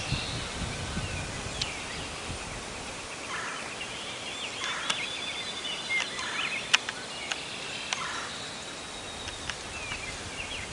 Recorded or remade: recorded